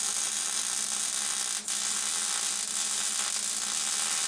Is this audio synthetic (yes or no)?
no